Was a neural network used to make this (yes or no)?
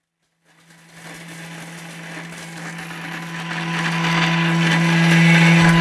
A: no